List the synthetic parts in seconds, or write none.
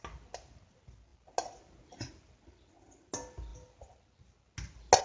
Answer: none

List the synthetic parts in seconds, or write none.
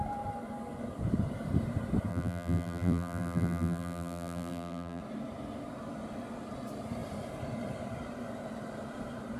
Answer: 2.1-5.0 (vocoder, BigVGAN v2)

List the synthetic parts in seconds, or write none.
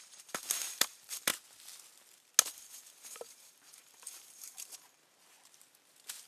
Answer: 0.0-1.3 (vocoder, BigVGAN v2); 2.5-5.0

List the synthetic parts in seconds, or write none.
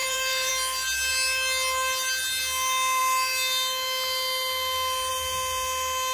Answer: 0.0-0.5 (vocoder, BigVGAN v2)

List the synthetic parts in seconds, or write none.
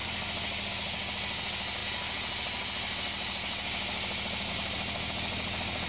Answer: none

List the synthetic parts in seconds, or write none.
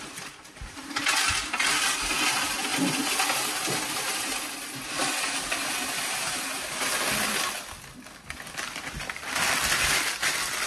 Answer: 0.0-2.7 (vocoder, BigVGAN v2); 7.1-10.7